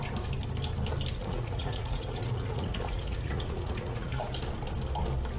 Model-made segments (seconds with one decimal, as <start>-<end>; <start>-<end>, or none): 1.2-4.2